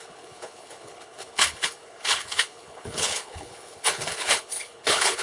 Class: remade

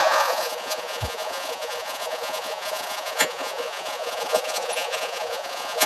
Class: remade